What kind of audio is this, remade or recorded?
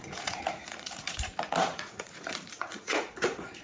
remade